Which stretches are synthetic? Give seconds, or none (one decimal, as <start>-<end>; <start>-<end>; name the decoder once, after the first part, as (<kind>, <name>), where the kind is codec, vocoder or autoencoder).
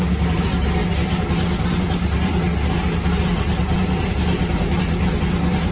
none